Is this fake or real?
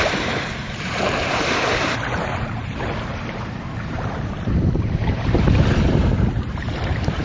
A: fake